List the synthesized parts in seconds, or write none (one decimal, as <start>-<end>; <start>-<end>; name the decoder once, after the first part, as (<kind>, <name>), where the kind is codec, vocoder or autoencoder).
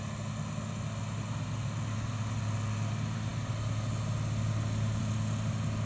none